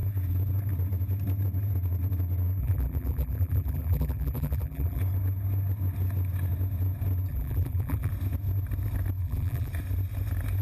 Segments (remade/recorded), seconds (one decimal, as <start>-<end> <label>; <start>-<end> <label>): 0.0-2.6 recorded; 2.6-5.0 remade; 5.0-7.3 recorded; 7.3-8.1 remade; 8.1-9.2 recorded; 9.2-9.7 remade; 9.7-10.6 recorded